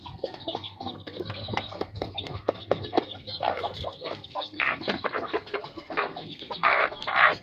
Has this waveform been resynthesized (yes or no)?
yes